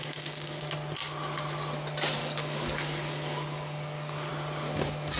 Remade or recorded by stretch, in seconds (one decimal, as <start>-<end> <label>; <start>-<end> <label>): 0.0-0.6 remade; 0.6-2.2 recorded; 2.2-4.3 remade; 4.3-5.2 recorded